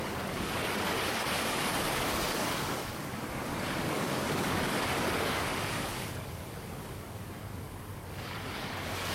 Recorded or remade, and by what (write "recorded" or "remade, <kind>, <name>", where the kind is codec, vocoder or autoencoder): remade, codec, DAC